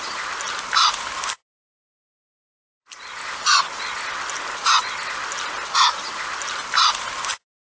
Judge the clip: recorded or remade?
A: recorded